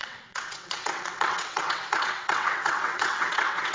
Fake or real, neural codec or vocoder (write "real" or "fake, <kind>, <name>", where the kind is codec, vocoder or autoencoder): fake, vocoder, WaveNeXt